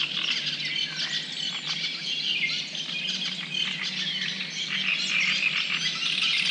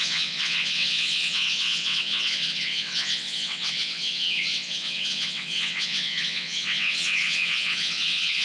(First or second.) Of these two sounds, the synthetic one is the second